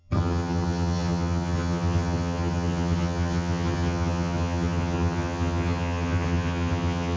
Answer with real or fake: fake